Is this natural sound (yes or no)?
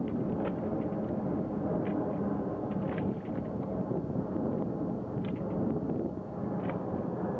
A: yes